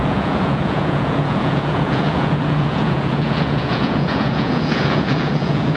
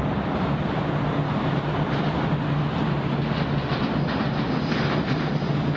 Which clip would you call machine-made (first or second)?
first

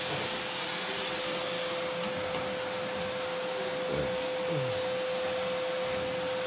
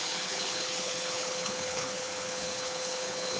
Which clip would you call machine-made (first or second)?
second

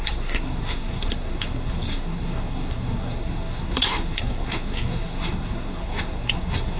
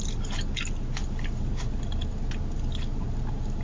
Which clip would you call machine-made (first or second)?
first